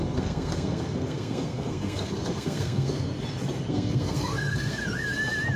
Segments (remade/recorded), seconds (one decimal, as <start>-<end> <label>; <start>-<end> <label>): 0.0-3.1 remade; 3.1-3.7 recorded; 3.7-4.8 remade; 4.8-5.6 recorded